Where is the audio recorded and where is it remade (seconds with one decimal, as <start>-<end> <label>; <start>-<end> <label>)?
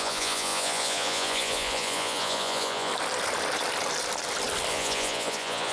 0.0-2.9 remade; 2.9-4.7 recorded; 4.7-5.7 remade